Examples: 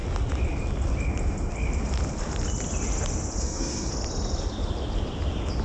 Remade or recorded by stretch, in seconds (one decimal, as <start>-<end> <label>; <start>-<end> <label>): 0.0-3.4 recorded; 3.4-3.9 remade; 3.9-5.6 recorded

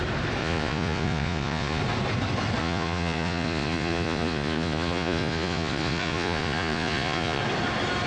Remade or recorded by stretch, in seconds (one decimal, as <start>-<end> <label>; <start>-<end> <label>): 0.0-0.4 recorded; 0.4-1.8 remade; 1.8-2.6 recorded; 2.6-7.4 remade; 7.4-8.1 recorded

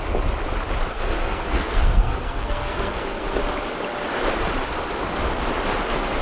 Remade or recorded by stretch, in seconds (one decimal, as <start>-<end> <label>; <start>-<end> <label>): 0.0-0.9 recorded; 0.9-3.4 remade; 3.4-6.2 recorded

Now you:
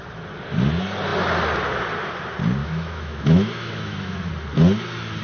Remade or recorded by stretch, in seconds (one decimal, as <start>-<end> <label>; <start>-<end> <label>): 0.0-2.6 recorded; 2.6-4.3 remade; 4.3-5.2 recorded